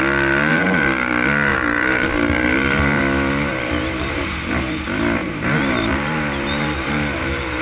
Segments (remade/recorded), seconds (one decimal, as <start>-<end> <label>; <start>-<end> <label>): 0.0-0.5 recorded; 0.5-1.1 remade; 1.1-1.5 recorded; 1.5-3.0 remade; 3.0-3.5 recorded; 3.5-4.2 remade; 4.2-5.2 recorded; 5.2-7.6 remade

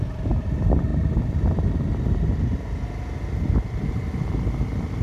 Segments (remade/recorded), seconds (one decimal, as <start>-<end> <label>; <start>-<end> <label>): 0.0-5.0 recorded

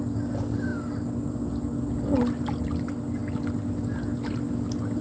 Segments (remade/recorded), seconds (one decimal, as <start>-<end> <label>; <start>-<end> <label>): 0.0-5.0 recorded

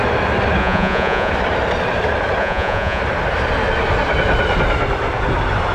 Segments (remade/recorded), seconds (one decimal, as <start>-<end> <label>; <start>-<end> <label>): 0.0-0.6 recorded; 0.6-1.3 remade; 1.3-2.4 recorded; 2.4-3.0 remade; 3.0-5.7 recorded